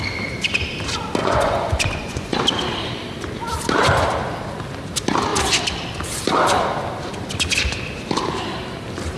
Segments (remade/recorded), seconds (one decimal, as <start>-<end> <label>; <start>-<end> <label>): 0.0-1.2 recorded; 1.2-2.4 remade; 2.4-9.2 recorded

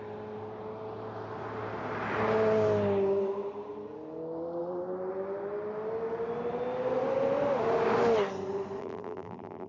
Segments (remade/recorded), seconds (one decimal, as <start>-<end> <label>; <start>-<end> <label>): 0.0-8.8 recorded; 8.8-9.7 remade

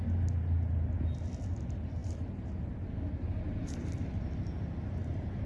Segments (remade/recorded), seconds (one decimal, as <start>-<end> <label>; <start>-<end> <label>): 0.0-5.5 recorded

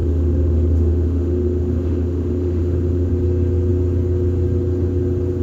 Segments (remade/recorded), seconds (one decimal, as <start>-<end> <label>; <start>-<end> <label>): 0.0-3.1 remade; 3.1-5.4 recorded

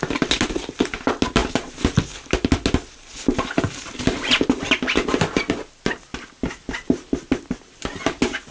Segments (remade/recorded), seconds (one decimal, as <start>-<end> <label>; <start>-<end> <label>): 0.0-8.5 recorded

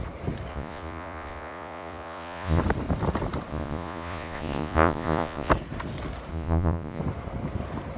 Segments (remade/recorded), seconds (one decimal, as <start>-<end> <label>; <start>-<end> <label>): 0.0-0.5 recorded; 0.5-2.6 remade; 2.6-3.5 recorded; 3.5-5.5 remade; 5.5-6.3 recorded; 6.3-7.0 remade; 7.0-8.0 recorded